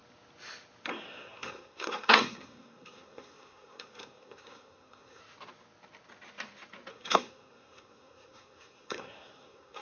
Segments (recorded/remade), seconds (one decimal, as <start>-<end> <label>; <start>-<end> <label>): 0.0-0.9 recorded; 0.9-5.2 remade; 5.2-6.9 recorded; 6.9-9.8 remade

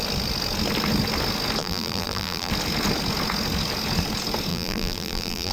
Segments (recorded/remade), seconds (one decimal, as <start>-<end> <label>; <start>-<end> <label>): 0.0-1.6 recorded; 1.6-2.5 remade; 2.5-4.5 recorded; 4.5-5.5 remade

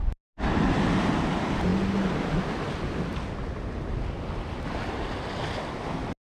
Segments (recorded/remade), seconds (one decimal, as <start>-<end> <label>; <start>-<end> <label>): 0.0-6.2 recorded

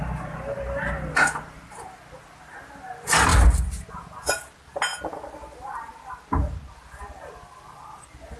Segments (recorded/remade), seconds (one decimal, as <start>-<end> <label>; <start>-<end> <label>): 0.0-8.4 recorded